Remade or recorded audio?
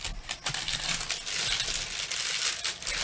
recorded